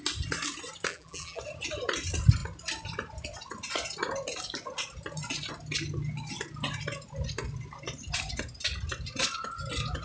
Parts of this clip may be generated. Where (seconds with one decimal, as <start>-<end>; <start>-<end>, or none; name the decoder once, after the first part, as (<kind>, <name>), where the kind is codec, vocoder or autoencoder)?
0.9-1.4 (vocoder, BigVGAN v2)